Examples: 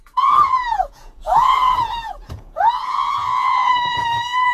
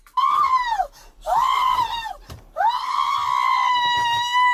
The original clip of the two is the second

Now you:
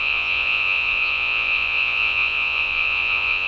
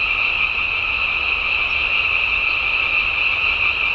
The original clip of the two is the second